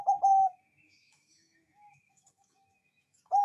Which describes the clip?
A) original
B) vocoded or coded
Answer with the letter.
B